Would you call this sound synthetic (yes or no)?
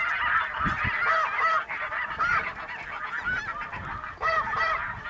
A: no